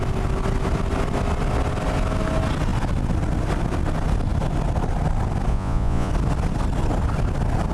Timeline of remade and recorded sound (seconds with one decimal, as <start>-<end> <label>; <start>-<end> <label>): 0.0-5.5 recorded; 5.5-6.1 remade; 6.1-7.7 recorded